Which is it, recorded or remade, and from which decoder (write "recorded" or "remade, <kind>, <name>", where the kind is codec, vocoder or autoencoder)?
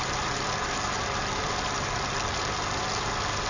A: recorded